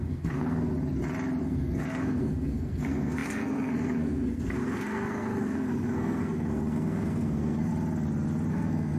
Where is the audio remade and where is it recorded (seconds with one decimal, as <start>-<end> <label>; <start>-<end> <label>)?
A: 0.0-0.7 remade; 0.7-1.4 recorded; 1.4-7.7 remade; 7.7-8.5 recorded; 8.5-9.0 remade